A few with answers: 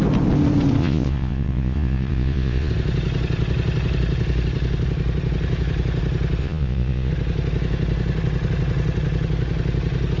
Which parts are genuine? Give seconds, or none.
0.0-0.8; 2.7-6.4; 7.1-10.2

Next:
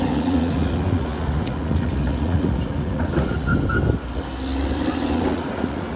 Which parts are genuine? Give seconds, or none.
3.5-5.1

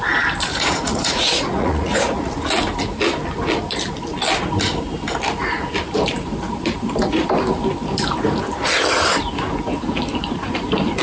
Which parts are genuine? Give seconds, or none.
0.0-0.5; 2.5-11.0

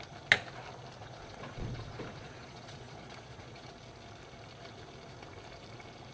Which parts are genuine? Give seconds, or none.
0.0-1.0; 3.7-6.1

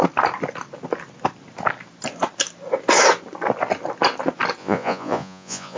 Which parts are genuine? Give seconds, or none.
0.0-4.6

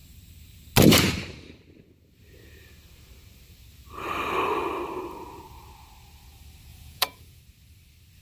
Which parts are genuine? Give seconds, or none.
0.0-6.7; 7.4-8.2

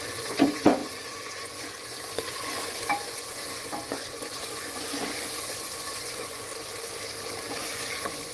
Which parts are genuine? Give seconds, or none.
6.5-7.5